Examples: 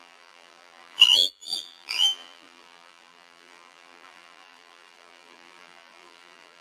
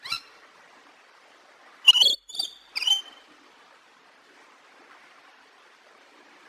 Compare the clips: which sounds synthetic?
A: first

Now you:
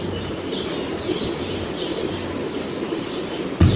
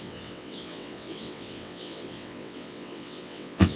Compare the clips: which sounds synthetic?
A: second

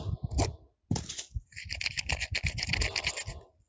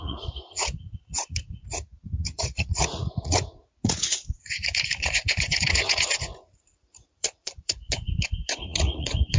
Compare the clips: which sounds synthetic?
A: second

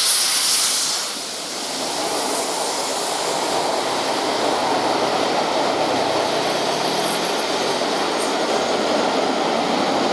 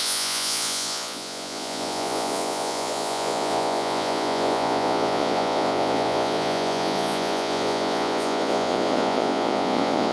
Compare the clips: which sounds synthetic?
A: second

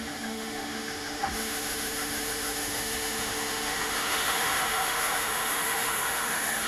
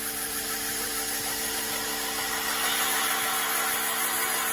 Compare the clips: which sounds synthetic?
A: first